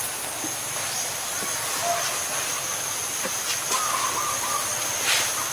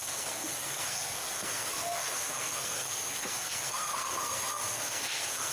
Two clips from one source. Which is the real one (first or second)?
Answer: first